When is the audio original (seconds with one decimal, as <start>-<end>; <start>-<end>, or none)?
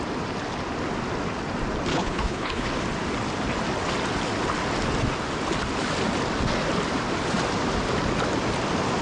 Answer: 0.0-1.9; 2.7-9.0